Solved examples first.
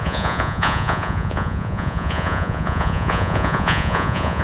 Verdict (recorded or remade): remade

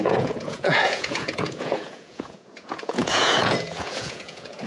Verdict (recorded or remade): remade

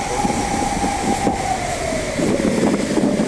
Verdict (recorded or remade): recorded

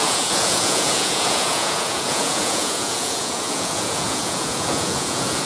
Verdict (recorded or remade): remade